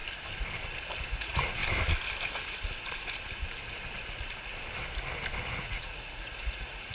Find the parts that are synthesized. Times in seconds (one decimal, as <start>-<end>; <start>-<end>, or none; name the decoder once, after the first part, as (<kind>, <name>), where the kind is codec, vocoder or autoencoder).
1.1-1.6 (vocoder, Vocos); 5.5-6.9